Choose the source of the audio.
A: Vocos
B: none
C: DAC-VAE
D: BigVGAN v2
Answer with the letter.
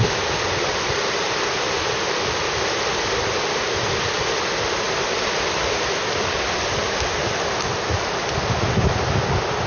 B